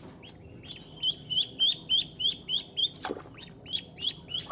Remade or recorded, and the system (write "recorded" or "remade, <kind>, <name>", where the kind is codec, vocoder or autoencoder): recorded